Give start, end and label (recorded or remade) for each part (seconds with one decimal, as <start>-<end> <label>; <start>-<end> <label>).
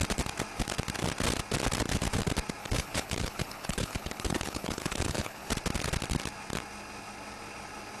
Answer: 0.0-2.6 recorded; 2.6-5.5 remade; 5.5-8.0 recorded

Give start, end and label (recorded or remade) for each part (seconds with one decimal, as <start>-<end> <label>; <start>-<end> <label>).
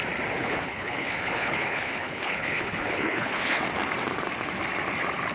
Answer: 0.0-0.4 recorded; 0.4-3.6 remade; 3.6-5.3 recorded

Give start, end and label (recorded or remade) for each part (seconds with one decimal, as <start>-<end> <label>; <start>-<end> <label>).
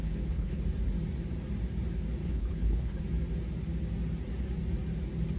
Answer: 0.0-0.6 remade; 0.6-2.2 recorded; 2.2-3.0 remade; 3.0-5.4 recorded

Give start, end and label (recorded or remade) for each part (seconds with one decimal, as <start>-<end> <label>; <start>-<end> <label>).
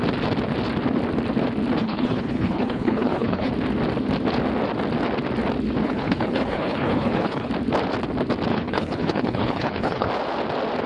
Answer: 0.0-1.8 recorded; 1.8-3.5 remade; 3.5-5.8 recorded; 5.8-7.5 remade; 7.5-8.5 recorded; 8.5-10.1 remade; 10.1-10.9 recorded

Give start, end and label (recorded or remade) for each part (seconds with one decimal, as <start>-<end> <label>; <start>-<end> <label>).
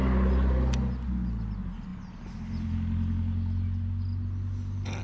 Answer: 0.0-5.0 recorded